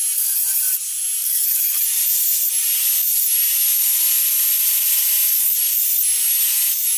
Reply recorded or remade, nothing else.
recorded